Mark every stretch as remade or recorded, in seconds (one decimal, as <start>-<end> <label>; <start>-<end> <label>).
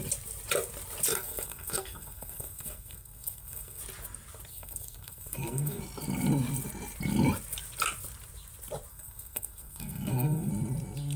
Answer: 0.0-1.1 recorded; 1.1-3.8 remade; 3.8-4.5 recorded; 4.5-5.8 remade; 5.8-8.9 recorded; 8.9-10.5 remade; 10.5-11.2 recorded